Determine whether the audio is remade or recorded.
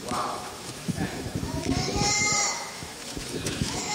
remade